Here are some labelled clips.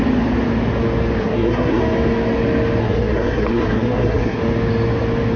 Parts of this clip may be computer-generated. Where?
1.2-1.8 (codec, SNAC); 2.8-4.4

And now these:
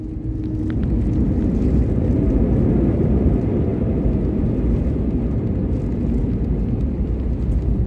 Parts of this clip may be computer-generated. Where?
none

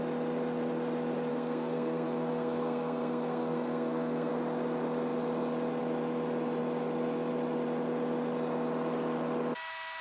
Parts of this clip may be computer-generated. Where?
1.3-4.3 (codec, SNAC)

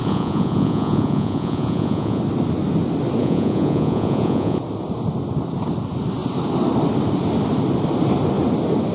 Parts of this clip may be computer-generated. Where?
0.0-2.2 (vocoder, Vocos); 3.2-4.6

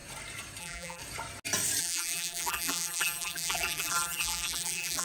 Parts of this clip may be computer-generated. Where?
0.6-1.0 (vocoder, BigVGAN v2); 1.8-5.0

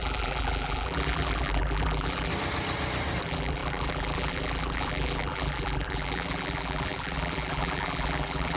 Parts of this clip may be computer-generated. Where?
0.0-2.3 (vocoder, BigVGAN v2); 3.2-8.6

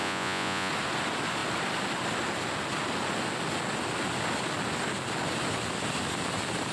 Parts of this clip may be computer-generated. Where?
0.0-0.7 (vocoder, Vocos)